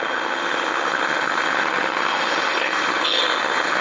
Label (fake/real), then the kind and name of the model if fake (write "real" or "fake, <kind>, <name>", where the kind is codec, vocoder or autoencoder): fake, vocoder, HiFi-GAN